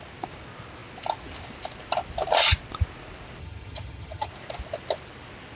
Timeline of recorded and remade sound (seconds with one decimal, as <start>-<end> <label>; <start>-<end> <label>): 0.0-3.4 recorded; 3.4-4.3 remade; 4.3-5.6 recorded